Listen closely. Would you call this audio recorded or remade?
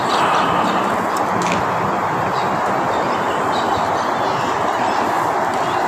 recorded